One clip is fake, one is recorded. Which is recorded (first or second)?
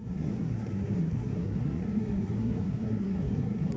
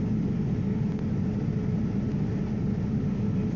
second